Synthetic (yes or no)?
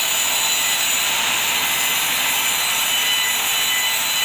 no